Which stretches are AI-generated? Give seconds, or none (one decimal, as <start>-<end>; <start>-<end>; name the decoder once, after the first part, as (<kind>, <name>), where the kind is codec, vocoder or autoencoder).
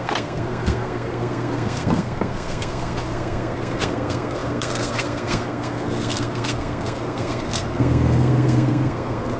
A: 0.0-9.4 (codec, SNAC)